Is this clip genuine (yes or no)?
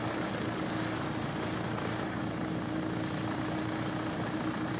yes